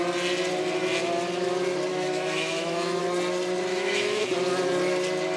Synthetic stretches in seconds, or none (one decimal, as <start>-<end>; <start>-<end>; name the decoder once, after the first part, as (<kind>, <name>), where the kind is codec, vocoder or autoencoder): 1.9-3.0 (autoencoder, DAC-VAE); 3.7-4.2